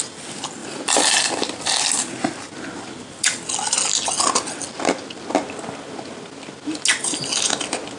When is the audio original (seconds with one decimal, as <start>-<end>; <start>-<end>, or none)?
0.0-0.6; 1.2-8.0